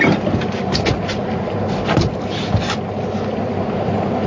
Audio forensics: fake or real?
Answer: fake